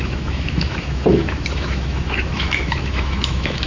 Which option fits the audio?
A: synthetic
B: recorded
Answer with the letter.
A